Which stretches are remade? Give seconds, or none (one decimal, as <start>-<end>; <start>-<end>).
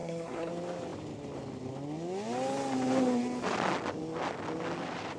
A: 0.0-0.5